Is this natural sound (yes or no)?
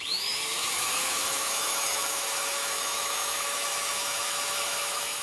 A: no